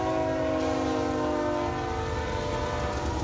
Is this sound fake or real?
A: real